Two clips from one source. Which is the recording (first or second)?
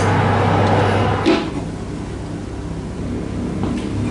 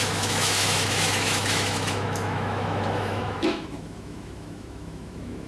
first